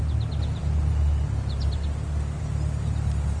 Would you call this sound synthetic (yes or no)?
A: no